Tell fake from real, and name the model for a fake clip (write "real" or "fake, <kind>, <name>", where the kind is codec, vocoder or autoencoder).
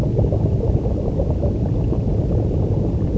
real